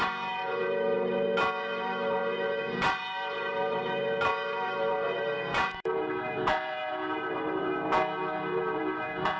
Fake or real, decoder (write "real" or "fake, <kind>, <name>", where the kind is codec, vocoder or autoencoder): fake, vocoder, BigVGAN v2